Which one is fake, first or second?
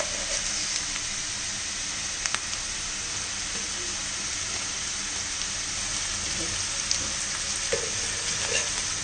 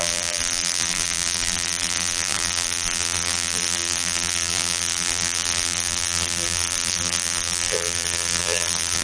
second